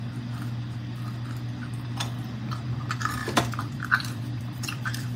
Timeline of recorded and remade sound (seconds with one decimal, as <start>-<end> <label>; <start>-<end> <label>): 0.0-3.2 recorded; 3.2-5.2 remade